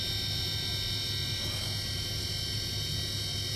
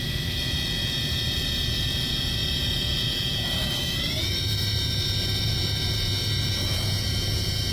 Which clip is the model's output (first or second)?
second